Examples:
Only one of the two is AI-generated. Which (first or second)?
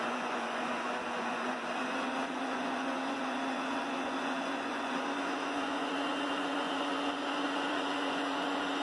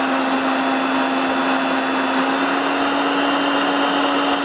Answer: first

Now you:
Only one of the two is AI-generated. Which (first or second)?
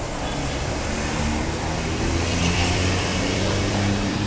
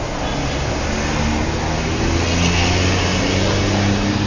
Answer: first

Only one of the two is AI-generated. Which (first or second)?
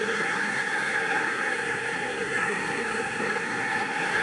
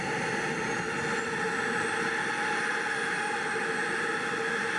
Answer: first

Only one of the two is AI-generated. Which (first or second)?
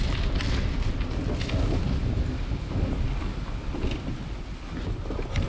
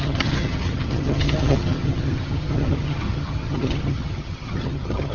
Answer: second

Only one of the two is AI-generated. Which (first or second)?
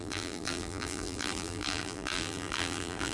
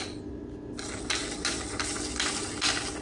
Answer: first